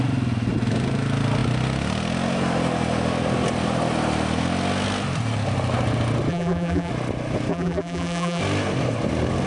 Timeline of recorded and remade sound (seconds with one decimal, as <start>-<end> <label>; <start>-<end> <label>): 0.0-6.3 recorded; 6.3-6.9 remade; 6.9-7.5 recorded; 7.5-8.4 remade; 8.4-9.5 recorded